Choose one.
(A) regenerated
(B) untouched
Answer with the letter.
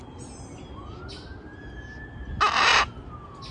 B